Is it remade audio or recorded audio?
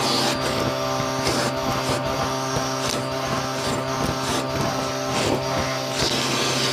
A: recorded